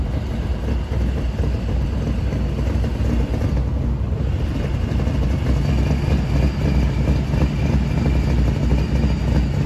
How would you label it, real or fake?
real